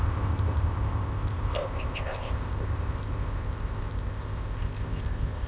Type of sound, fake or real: fake